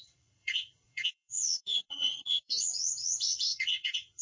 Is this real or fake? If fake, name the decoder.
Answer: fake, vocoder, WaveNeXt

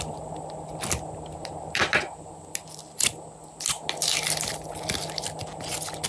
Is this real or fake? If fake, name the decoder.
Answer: real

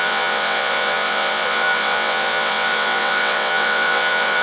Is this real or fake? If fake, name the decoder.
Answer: fake, vocoder, WaveNeXt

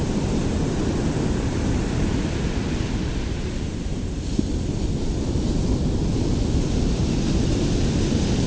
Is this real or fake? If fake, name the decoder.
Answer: real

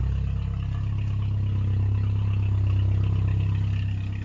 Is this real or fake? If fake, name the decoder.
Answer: real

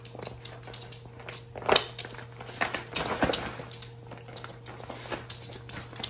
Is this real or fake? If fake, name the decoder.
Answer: real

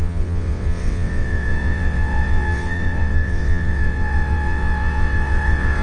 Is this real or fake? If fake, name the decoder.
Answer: fake, vocoder, WaveNeXt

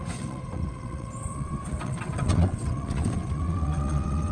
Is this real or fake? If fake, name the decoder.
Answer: fake, vocoder, WaveNeXt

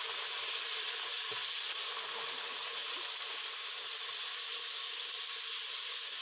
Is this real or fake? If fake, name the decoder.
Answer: real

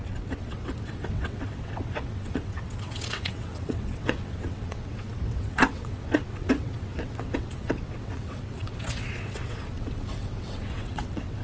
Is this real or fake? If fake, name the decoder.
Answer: fake, vocoder, WaveNeXt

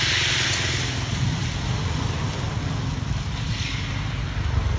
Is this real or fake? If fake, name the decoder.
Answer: real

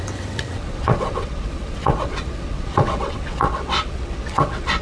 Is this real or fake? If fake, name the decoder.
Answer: fake, vocoder, WaveNeXt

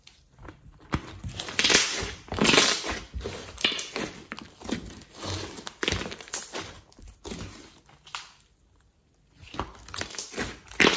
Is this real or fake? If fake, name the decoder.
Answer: real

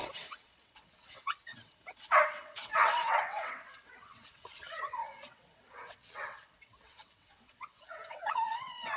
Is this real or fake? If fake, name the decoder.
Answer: fake, vocoder, WaveNeXt